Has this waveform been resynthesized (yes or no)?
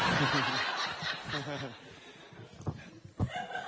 no